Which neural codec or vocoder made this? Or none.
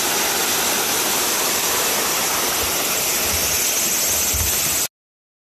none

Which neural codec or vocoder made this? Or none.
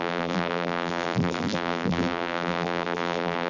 vocoder, BigVGAN v2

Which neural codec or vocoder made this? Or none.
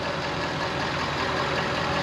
none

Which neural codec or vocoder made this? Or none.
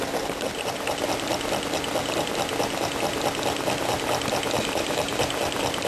none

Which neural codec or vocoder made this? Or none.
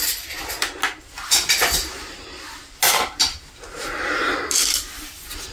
none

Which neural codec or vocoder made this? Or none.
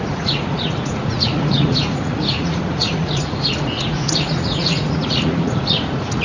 vocoder, Vocos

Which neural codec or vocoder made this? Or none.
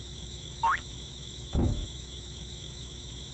autoencoder, DAC-VAE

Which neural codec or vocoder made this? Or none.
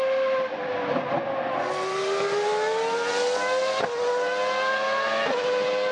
none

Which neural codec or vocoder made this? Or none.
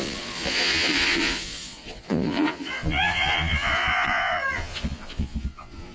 vocoder, Vocos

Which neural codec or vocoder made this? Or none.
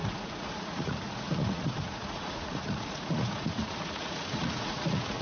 vocoder, Vocos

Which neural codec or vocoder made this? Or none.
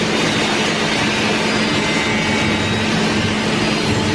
none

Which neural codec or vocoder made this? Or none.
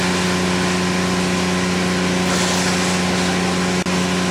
none